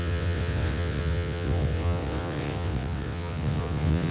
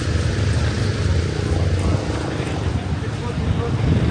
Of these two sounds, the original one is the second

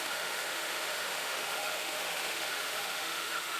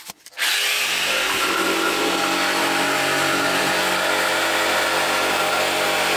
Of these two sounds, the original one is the second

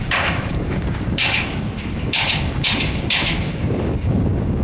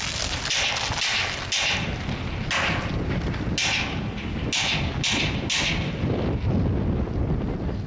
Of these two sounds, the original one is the second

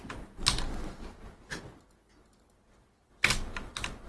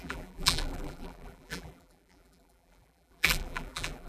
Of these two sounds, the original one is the first